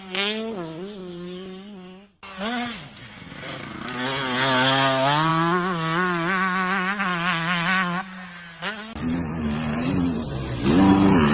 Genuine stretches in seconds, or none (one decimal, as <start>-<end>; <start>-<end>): 0.0-11.3